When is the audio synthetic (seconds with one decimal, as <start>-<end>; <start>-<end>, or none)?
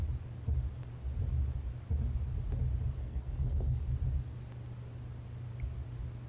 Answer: 3.0-3.8